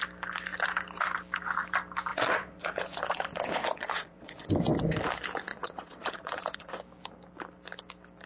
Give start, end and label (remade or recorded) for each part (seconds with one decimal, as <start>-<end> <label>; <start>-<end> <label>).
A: 0.0-2.1 recorded; 2.1-4.5 remade; 4.5-5.5 recorded; 5.5-6.7 remade; 6.7-8.3 recorded